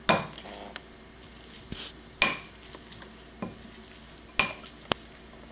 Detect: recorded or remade recorded